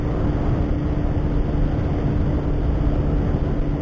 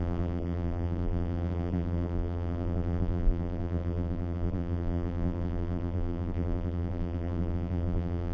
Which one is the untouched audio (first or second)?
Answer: first